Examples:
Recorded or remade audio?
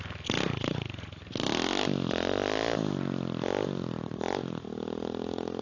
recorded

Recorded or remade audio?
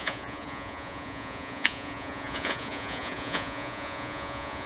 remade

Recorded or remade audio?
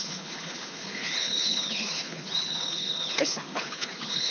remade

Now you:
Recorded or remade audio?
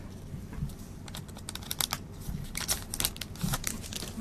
recorded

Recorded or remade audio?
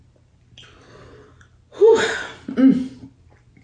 recorded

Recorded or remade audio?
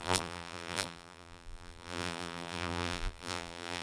remade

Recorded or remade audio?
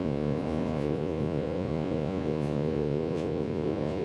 remade